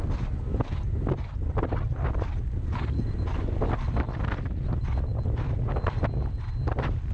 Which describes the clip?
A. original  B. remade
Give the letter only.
A